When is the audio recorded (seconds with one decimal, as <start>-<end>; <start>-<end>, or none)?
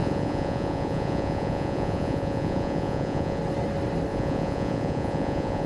3.4-4.1